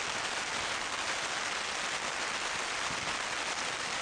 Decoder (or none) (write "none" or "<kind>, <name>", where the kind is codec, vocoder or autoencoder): none